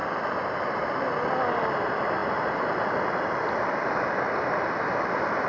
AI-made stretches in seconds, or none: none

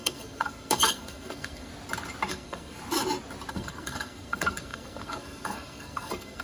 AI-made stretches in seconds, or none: 0.0-1.7 (codec, SNAC); 2.3-2.8; 3.5-6.4

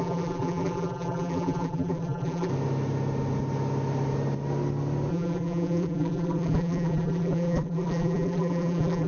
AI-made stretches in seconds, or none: 0.0-2.5 (vocoder, BigVGAN v2); 5.1-9.1

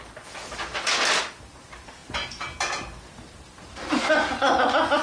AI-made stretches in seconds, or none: none